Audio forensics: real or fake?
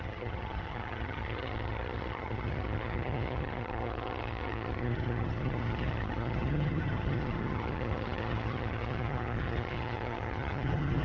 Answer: fake